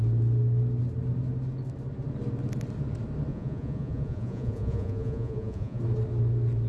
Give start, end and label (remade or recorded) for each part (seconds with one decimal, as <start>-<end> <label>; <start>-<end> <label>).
0.0-3.3 recorded; 3.3-5.8 remade; 5.8-6.7 recorded